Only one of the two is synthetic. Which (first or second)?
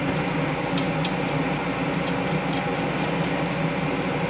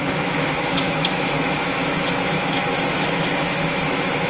second